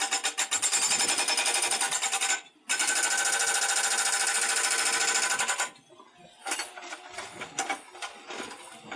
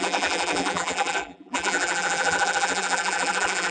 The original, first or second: first